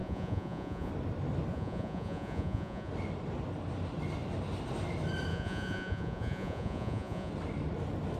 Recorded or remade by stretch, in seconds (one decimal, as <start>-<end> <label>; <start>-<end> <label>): 0.0-0.9 remade; 0.9-1.5 recorded; 1.5-2.9 remade; 2.9-5.3 recorded; 5.3-7.3 remade; 7.3-8.2 recorded